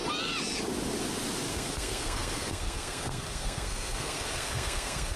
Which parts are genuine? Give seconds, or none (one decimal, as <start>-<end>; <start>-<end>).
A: 0.0-1.5